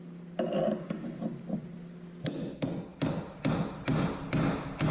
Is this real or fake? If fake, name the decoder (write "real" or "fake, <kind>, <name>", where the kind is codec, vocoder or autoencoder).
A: real